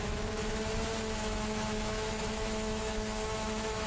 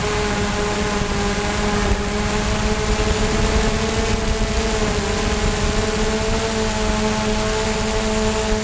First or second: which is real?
second